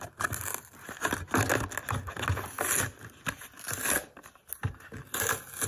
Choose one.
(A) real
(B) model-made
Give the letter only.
A